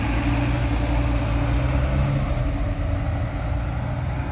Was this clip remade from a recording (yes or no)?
no